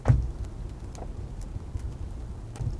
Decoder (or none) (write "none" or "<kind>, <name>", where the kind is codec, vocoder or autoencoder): none